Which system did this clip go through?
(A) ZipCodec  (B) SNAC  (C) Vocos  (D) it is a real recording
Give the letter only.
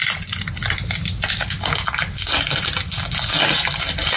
D